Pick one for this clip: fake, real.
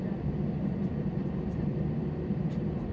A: fake